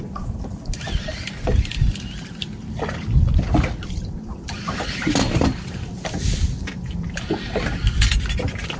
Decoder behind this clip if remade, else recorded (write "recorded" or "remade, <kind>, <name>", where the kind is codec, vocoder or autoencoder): recorded